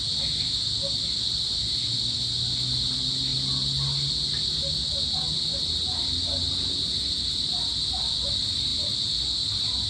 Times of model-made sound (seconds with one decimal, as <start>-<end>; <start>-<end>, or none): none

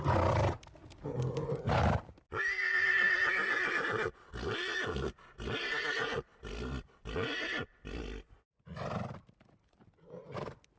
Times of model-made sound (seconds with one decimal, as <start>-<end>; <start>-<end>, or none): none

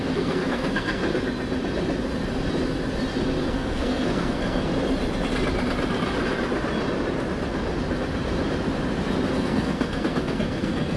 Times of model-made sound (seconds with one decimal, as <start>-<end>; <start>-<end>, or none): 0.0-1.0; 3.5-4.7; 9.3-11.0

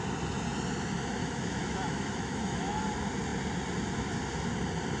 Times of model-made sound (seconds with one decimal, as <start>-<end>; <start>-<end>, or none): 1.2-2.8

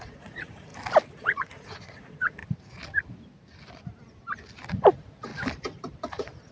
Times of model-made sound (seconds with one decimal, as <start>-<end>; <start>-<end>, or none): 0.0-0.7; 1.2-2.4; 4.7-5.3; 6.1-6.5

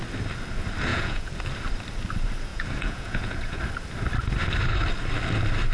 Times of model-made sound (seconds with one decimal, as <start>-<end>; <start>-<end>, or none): 0.9-1.4; 2.5-3.6

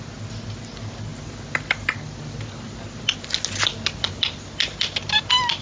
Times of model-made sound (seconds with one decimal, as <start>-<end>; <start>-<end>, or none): none

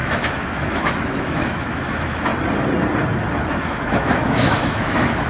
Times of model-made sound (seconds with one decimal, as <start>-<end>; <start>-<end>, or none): 0.0-2.3; 3.5-5.3